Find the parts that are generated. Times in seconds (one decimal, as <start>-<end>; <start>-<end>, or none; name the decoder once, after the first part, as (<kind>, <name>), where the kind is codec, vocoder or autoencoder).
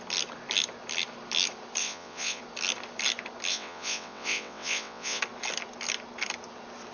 1.8-2.4 (vocoder, WaveNeXt); 3.5-5.2